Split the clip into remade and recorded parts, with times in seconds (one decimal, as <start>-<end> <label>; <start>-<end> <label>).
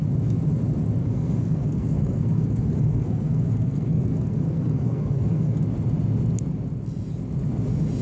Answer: 0.0-1.0 recorded; 1.0-5.6 remade; 5.6-8.0 recorded